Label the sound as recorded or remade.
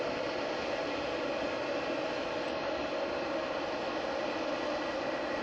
recorded